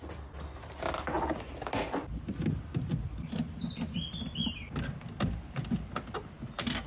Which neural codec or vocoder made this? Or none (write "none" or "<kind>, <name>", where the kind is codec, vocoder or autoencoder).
none